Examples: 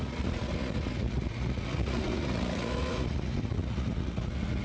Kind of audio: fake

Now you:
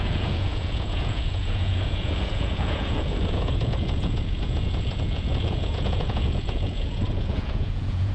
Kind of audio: fake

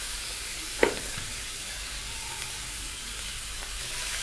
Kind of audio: fake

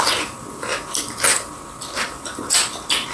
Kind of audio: fake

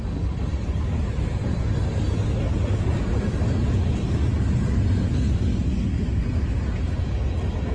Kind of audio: real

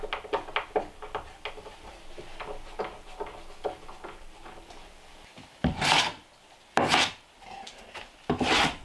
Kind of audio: real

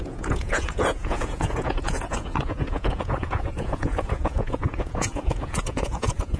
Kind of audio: fake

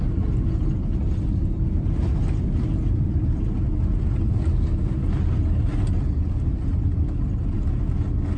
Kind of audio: real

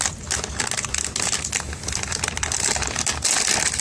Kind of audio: real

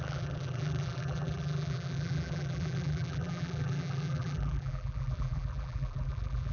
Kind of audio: fake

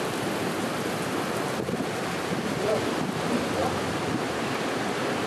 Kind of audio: real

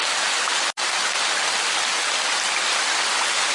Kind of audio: real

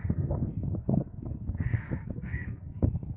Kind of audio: fake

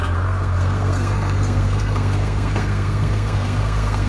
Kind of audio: fake